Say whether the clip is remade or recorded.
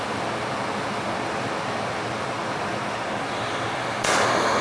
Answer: recorded